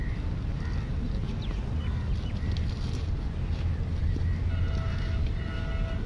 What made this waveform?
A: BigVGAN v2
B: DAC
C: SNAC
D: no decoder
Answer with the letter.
D